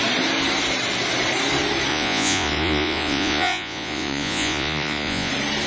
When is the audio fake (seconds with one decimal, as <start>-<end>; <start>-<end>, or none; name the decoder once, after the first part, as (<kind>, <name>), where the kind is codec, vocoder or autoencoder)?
1.9-5.3 (vocoder, Vocos)